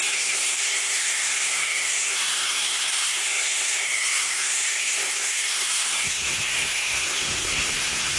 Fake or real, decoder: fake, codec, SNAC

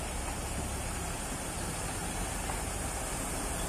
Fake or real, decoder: real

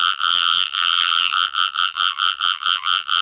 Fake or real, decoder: fake, vocoder, BigVGAN v2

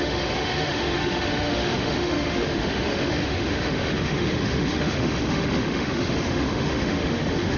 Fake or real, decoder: fake, autoencoder, DAC-VAE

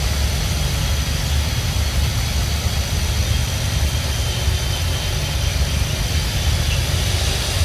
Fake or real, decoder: real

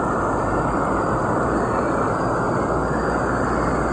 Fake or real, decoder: real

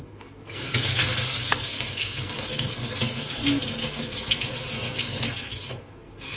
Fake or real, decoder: fake, codec, SNAC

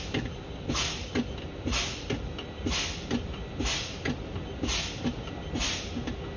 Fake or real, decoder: real